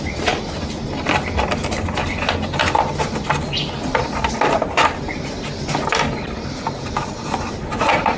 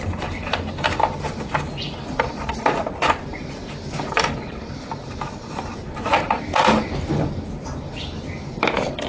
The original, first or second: first